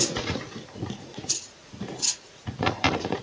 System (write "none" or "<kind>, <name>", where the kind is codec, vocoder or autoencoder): vocoder, Vocos